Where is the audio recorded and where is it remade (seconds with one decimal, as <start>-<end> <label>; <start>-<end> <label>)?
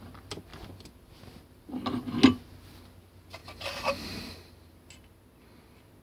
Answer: 0.0-6.0 recorded